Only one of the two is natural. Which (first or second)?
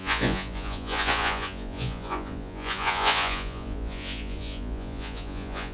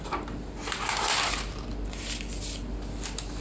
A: second